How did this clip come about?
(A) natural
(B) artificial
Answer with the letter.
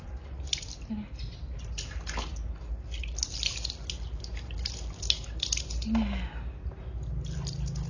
A